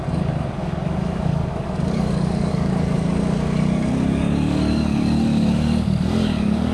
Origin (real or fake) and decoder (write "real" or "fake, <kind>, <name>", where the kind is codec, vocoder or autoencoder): fake, codec, DAC